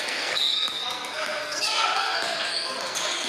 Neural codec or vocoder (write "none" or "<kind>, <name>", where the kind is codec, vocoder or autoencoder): codec, SNAC